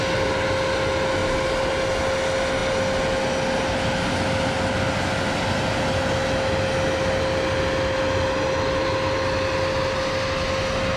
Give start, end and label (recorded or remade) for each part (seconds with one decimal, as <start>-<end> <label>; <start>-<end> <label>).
0.0-1.2 recorded; 1.2-1.7 remade; 1.7-11.0 recorded